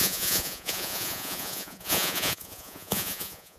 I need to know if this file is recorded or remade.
remade